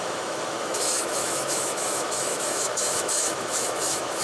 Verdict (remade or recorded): remade